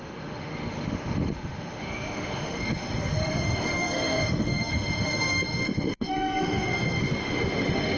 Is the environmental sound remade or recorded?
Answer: remade